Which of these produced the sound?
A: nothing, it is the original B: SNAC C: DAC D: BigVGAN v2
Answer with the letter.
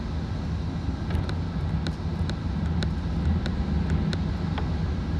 A